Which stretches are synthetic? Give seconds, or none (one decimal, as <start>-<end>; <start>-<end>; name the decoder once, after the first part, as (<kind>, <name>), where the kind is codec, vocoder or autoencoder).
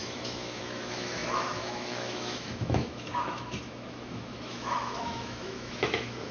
0.0-6.3 (autoencoder, DAC-VAE)